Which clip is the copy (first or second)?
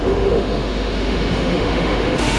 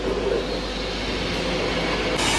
first